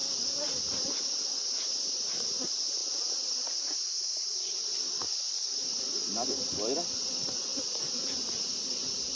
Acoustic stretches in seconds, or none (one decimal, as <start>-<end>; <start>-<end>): 0.0-2.8; 6.3-9.2